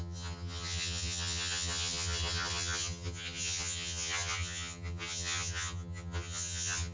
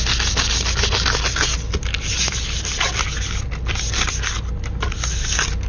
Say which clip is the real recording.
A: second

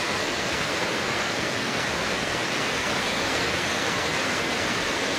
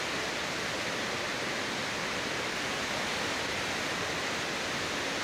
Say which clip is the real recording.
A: second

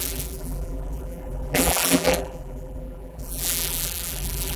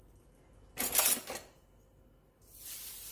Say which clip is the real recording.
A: second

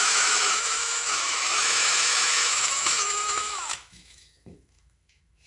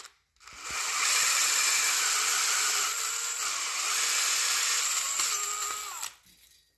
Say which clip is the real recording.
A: second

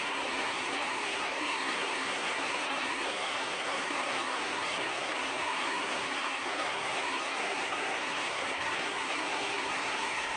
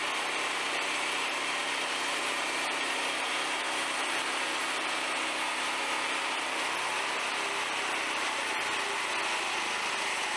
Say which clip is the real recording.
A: second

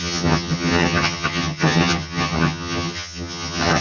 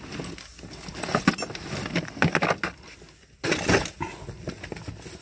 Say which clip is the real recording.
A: second